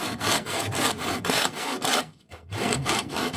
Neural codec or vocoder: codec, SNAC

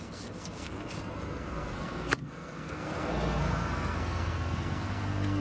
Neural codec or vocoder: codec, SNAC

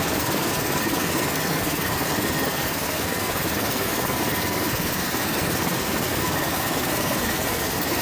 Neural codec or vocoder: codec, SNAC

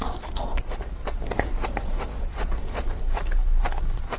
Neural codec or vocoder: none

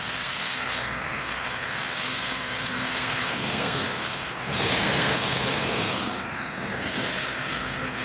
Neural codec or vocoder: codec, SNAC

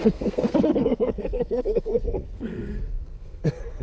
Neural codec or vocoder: codec, SNAC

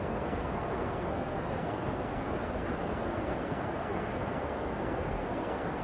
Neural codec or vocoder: codec, SNAC